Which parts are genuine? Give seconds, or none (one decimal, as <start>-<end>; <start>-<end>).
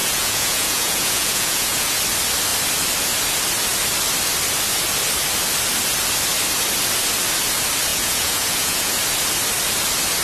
2.0-7.9; 8.9-10.2